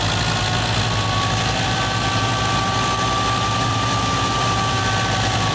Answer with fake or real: real